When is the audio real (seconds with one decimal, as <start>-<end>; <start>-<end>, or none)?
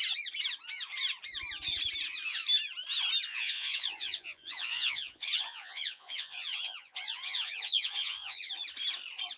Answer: 0.0-3.3; 8.5-9.4